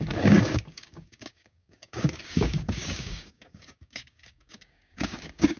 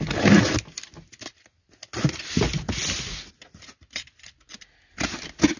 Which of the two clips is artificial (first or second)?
first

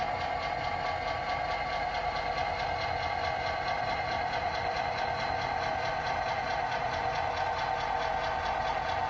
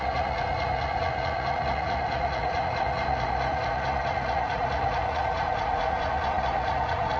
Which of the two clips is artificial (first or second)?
second